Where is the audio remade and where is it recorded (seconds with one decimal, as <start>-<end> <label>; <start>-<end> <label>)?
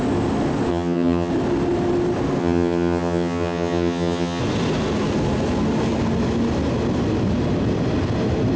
0.0-0.7 recorded; 0.7-1.3 remade; 1.3-2.4 recorded; 2.4-4.4 remade; 4.4-8.6 recorded